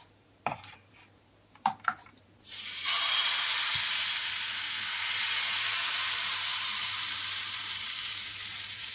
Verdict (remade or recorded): remade